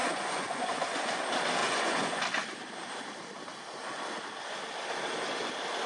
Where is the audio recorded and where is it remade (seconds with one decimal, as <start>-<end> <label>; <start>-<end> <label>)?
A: 0.0-1.2 remade; 1.2-1.6 recorded; 1.6-2.2 remade; 2.2-5.9 recorded